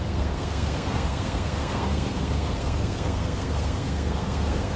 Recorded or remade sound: remade